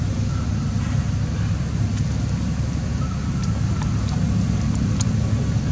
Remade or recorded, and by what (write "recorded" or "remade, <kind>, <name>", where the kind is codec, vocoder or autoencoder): recorded